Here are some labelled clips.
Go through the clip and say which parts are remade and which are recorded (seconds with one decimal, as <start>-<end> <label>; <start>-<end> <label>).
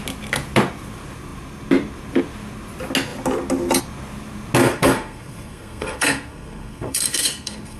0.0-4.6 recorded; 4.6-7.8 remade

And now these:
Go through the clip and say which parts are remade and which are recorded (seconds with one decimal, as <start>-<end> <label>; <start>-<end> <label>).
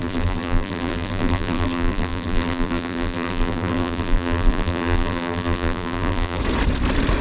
0.0-6.4 remade; 6.4-7.2 recorded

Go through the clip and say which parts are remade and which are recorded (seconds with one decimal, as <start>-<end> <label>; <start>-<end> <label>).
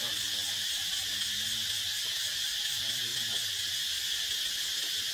0.0-5.1 recorded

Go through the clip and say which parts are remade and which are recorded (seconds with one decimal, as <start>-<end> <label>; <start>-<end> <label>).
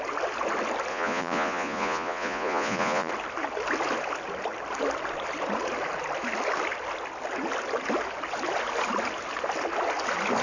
0.0-0.9 recorded; 0.9-3.1 remade; 3.1-10.4 recorded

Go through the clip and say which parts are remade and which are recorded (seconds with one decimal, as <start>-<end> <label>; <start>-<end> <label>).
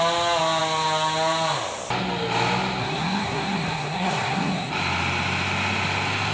0.0-2.8 recorded; 2.8-4.7 remade; 4.7-6.3 recorded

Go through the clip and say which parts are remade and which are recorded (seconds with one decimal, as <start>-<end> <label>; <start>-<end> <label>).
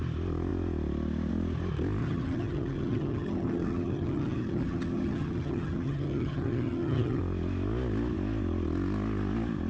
0.0-2.0 recorded; 2.0-7.2 remade; 7.2-9.7 recorded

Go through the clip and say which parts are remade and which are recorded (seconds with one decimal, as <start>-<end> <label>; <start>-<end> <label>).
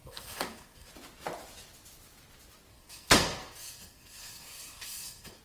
0.0-0.9 remade; 0.9-2.7 recorded; 2.7-5.4 remade